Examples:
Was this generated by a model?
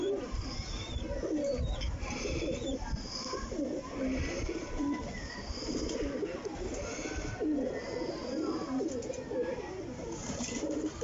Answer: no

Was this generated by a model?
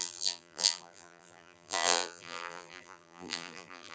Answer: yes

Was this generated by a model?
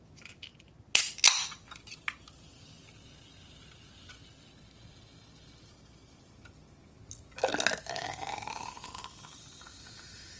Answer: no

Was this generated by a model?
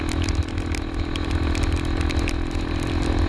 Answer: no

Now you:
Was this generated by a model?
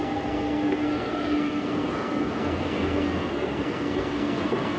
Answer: yes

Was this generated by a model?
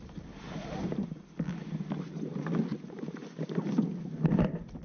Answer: no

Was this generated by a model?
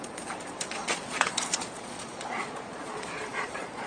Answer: yes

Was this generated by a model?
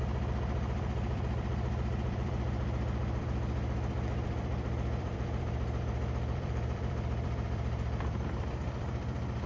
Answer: yes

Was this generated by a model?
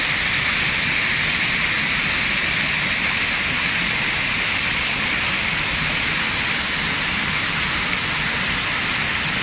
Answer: no